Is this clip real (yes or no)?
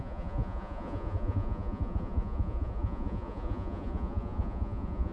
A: no